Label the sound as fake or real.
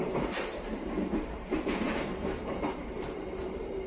fake